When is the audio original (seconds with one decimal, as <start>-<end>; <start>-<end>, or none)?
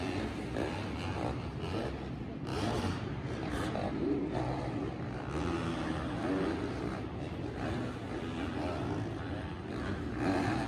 0.0-2.5; 4.4-10.7